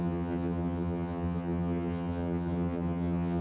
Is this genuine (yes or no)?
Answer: no